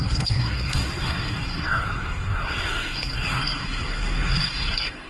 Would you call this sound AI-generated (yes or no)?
yes